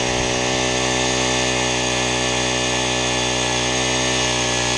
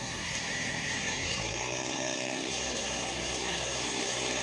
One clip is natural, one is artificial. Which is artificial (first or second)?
second